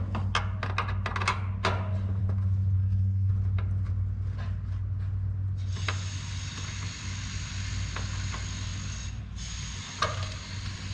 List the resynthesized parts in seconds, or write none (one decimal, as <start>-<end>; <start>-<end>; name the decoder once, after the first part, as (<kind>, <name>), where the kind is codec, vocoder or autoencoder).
2.8-3.3 (codec, SNAC)